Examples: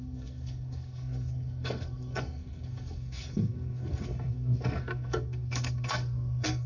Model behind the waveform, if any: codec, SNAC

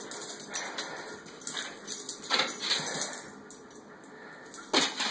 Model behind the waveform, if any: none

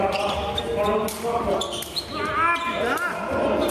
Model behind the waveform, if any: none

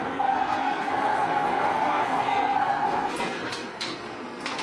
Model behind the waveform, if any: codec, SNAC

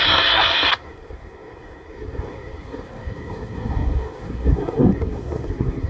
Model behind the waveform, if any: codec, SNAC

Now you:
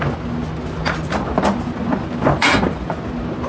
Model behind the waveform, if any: none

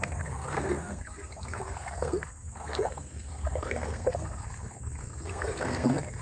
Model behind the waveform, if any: codec, SNAC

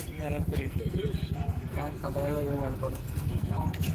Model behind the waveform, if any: codec, SNAC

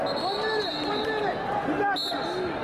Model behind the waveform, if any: none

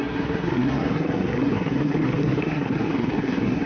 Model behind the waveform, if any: codec, SNAC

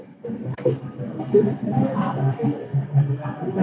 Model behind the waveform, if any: codec, SNAC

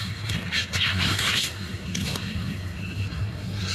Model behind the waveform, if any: codec, SNAC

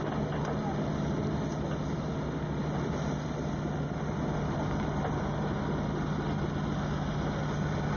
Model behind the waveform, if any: none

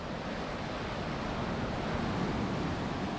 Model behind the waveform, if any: none